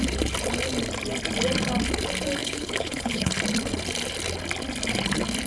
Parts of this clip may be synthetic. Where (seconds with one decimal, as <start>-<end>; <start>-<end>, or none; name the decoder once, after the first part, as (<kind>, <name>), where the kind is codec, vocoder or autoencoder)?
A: 2.4-3.3 (codec, HILCodec)